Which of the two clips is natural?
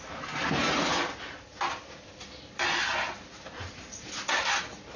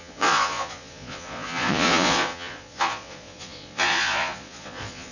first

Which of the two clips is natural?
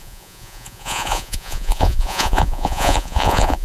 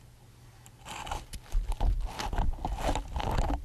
second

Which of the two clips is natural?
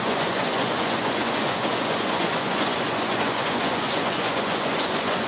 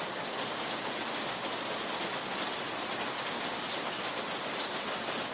second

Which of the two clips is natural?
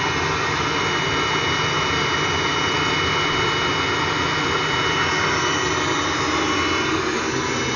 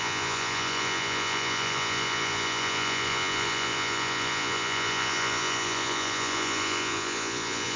first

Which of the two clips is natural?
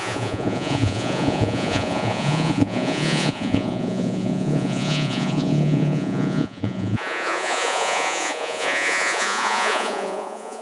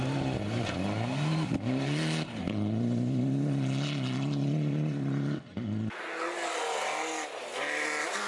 second